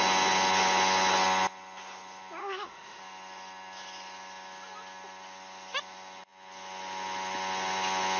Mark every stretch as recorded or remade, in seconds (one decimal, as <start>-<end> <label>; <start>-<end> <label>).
0.0-2.4 recorded; 2.4-3.0 remade; 3.0-8.2 recorded